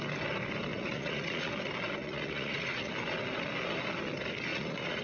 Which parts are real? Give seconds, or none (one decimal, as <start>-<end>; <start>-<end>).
0.0-0.7; 1.5-2.0; 2.9-4.5